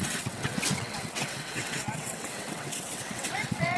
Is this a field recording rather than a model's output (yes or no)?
no